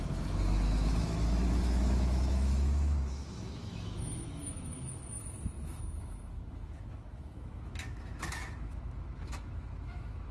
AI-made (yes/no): yes